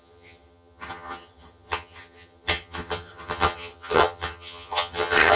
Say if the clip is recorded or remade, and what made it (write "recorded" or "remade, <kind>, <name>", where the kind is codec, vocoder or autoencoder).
remade, vocoder, HiFi-GAN